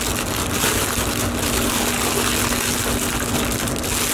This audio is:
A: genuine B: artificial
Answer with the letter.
A